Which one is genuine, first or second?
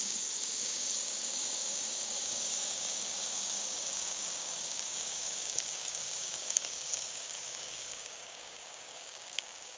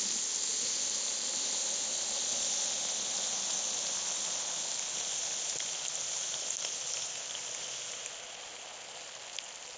second